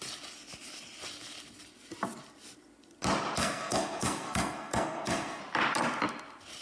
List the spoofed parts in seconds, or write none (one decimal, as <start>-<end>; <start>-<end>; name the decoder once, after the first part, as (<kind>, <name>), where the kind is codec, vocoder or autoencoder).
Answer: 3.4-5.4 (codec, SNAC)